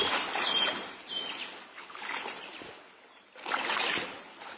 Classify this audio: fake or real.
real